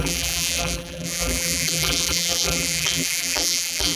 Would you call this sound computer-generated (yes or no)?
yes